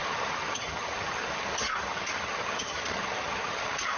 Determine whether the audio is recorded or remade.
remade